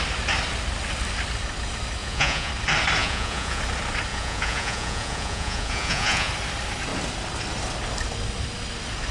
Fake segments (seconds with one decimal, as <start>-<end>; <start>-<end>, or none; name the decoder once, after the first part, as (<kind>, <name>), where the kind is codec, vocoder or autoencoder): 2.0-2.5 (vocoder, Vocos); 3.0-3.6; 4.1-6.3